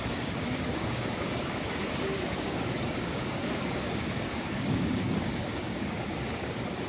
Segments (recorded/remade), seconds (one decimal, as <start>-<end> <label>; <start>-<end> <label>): 0.0-6.9 remade